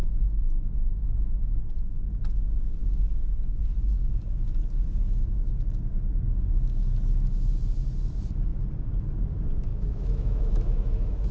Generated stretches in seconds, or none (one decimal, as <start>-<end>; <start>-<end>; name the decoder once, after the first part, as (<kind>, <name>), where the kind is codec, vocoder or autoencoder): 0.0-1.6 (autoencoder, DAC-VAE); 9.7-11.3